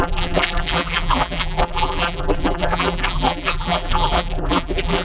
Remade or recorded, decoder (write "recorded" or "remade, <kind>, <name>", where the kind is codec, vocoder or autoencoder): remade, vocoder, BigVGAN v2